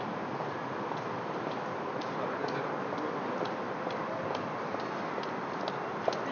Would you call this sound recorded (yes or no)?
yes